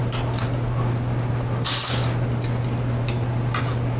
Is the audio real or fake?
real